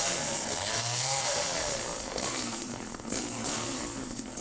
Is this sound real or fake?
fake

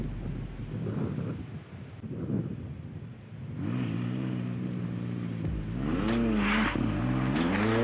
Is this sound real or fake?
real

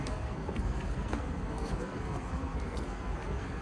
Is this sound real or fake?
fake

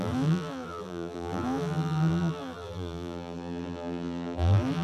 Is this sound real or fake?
fake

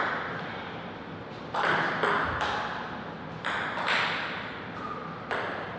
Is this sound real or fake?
real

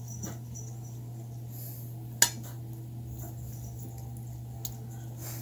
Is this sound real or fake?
real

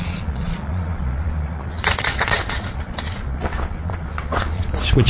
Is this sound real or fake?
fake